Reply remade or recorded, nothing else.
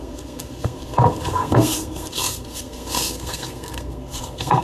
remade